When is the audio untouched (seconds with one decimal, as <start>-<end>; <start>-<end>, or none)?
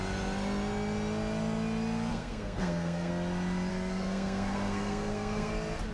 0.0-2.1; 3.1-3.7; 5.5-5.9